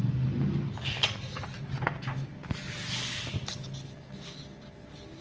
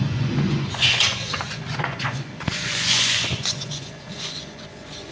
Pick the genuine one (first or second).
first